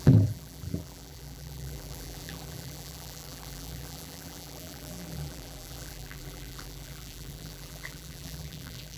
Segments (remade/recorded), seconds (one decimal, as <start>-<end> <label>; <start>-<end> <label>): 0.0-9.0 remade